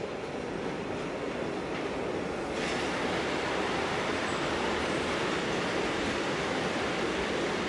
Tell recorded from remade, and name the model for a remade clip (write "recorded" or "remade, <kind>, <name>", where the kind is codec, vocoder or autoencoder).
recorded